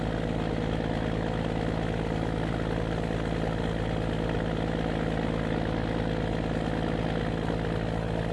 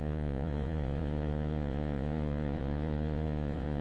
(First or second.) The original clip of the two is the first